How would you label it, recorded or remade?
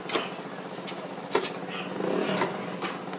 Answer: recorded